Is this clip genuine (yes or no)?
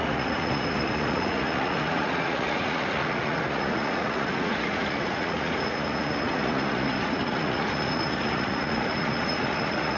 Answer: no